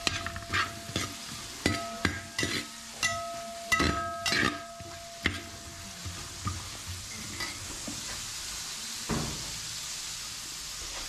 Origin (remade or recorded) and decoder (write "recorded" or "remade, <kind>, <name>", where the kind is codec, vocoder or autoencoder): recorded